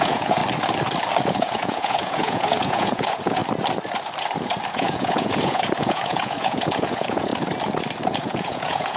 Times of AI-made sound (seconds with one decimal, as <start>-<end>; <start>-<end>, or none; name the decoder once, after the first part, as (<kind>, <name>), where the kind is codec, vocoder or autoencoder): 0.0-0.4 (vocoder, Vocos); 1.3-3.4; 4.7-7.3; 8.1-9.0